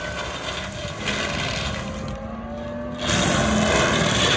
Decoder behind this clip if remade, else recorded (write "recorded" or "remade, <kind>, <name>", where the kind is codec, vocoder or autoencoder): recorded